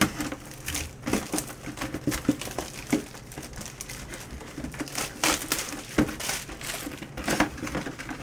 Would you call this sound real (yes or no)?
yes